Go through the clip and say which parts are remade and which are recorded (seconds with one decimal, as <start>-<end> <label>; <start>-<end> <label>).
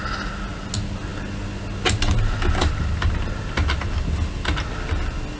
0.0-5.4 recorded